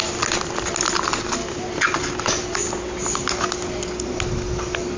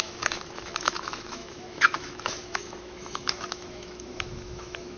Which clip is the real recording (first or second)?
first